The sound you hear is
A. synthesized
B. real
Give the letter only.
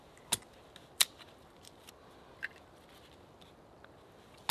B